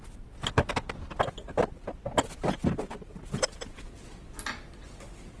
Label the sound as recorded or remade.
recorded